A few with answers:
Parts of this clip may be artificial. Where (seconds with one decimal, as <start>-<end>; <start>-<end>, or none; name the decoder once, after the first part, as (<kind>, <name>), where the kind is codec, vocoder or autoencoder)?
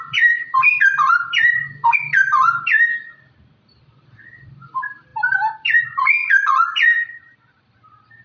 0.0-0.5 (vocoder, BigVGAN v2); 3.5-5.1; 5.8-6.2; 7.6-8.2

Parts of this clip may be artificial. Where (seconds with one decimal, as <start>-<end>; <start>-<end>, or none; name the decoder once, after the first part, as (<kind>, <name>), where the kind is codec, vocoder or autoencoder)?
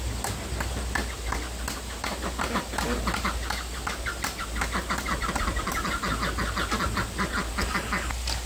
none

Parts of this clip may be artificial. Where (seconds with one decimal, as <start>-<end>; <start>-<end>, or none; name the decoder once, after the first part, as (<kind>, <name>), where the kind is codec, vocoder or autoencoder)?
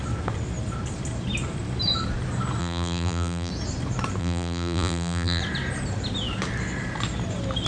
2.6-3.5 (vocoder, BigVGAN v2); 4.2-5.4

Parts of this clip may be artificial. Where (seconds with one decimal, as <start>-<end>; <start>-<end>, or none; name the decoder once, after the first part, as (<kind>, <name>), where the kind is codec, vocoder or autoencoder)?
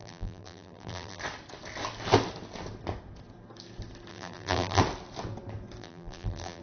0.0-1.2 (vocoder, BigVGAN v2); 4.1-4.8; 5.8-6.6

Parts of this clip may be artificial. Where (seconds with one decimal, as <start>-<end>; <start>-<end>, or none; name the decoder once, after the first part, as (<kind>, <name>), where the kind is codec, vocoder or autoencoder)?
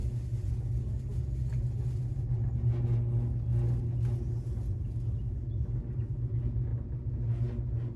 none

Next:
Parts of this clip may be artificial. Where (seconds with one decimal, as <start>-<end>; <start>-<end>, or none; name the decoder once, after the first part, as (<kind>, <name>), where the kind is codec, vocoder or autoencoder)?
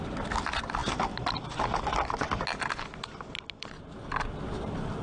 none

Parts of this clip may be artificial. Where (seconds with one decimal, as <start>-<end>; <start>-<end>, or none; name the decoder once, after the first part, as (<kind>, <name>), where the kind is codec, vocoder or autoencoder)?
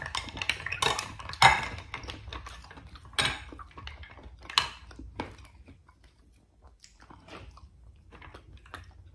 none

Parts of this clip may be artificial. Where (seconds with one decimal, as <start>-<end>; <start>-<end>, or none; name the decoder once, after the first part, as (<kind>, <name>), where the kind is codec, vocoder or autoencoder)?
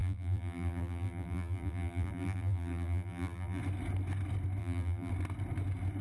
0.0-3.6 (vocoder, BigVGAN v2); 4.6-5.1